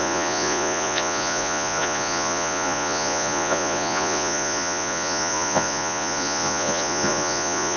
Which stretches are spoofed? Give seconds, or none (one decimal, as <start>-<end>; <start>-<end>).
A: 0.0-7.8